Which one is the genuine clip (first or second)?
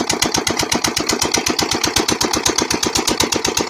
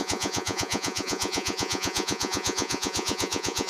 first